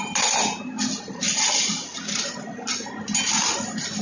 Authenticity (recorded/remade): recorded